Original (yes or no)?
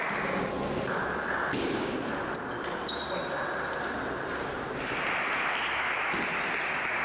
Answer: yes